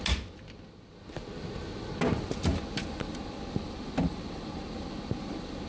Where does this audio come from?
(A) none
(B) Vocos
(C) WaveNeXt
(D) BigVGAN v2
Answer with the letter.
A